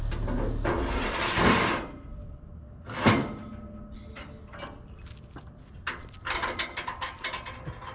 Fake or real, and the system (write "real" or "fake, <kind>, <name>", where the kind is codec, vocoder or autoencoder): real